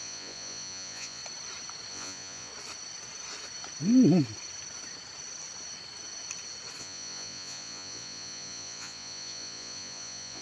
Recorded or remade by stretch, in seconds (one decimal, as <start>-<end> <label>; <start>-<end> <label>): 0.0-1.2 remade; 1.2-1.9 recorded; 1.9-2.5 remade; 2.5-6.8 recorded; 6.8-10.4 remade